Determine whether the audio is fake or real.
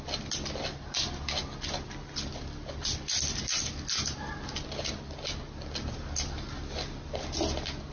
real